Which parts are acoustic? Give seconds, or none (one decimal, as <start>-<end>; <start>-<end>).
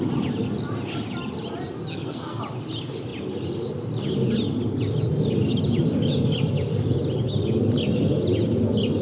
0.0-1.9; 2.4-9.0